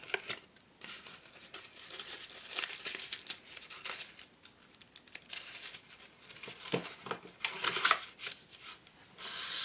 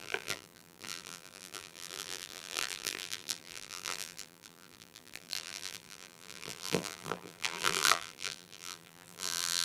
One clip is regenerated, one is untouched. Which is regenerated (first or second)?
second